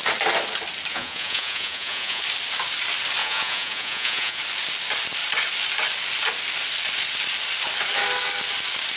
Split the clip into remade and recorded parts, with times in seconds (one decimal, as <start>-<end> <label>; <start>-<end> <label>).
0.0-0.9 recorded; 0.9-2.2 remade; 2.2-3.2 recorded; 3.2-4.4 remade; 4.4-9.0 recorded